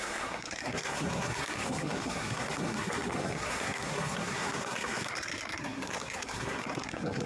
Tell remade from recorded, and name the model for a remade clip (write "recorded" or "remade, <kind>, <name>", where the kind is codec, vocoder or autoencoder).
remade, codec, SNAC